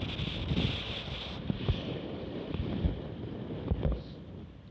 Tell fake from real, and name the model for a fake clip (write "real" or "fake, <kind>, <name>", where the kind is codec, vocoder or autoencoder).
real